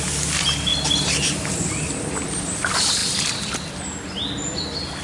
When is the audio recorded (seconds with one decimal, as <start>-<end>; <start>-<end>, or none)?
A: 0.0-0.7; 1.9-3.0; 3.7-5.0